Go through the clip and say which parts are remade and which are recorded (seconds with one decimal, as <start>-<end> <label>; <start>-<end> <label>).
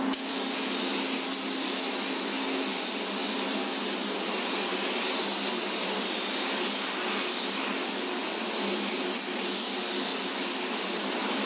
0.0-10.1 recorded; 10.1-11.1 remade; 11.1-11.5 recorded